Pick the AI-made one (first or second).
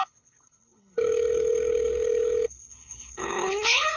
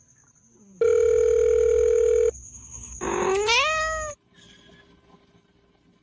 first